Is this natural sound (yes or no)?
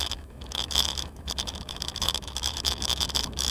no